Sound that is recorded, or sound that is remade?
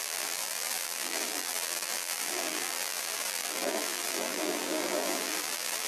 remade